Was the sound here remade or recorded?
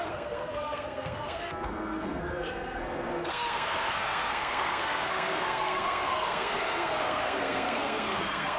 remade